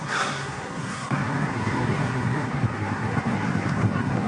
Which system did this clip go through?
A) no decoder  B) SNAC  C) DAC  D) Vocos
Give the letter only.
B